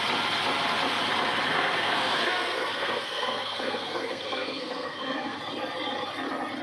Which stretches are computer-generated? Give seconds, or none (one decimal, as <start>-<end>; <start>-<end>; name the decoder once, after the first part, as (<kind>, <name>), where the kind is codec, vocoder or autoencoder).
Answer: 1.5-5.4 (codec, SNAC)